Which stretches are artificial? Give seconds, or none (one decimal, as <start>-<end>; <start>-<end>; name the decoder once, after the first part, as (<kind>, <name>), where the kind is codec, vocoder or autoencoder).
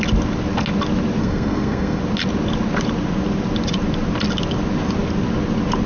1.2-2.0 (codec, SNAC)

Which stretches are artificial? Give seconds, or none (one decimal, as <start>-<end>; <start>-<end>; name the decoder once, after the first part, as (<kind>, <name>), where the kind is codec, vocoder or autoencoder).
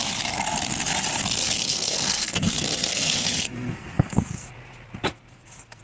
1.4-4.5 (codec, SNAC); 5.1-5.8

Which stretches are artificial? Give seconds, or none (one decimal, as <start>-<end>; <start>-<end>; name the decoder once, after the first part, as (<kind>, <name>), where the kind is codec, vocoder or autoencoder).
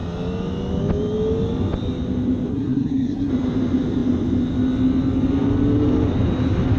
2.5-3.3 (codec, SNAC)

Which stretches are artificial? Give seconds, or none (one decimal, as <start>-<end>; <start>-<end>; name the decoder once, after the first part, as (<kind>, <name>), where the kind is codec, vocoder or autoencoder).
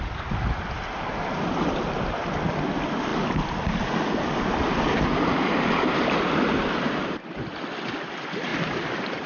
none